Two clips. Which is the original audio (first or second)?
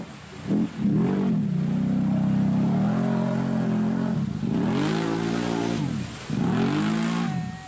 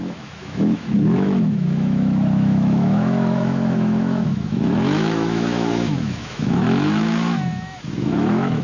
first